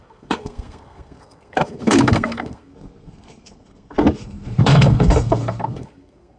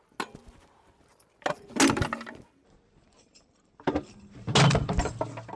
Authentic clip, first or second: second